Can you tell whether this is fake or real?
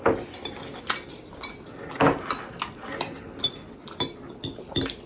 real